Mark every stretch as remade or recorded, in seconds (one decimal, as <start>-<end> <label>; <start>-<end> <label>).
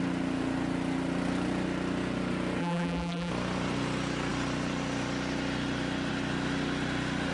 0.0-2.6 recorded; 2.6-3.3 remade; 3.3-7.3 recorded